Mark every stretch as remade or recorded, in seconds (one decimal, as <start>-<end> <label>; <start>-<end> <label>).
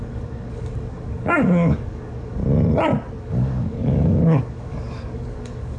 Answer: 0.0-2.4 remade; 2.4-3.2 recorded; 3.2-5.8 remade